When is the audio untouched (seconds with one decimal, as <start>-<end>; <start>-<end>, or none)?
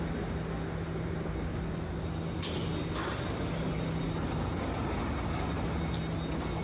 0.0-6.6